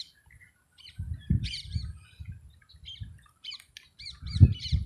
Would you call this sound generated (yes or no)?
no